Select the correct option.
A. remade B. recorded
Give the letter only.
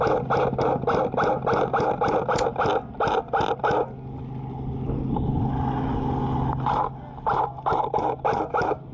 B